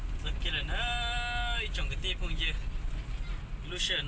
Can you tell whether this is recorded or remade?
recorded